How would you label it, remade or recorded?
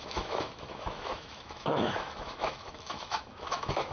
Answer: remade